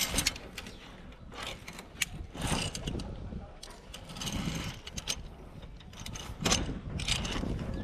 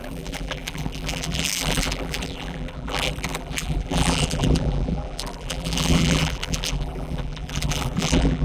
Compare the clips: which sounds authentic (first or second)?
first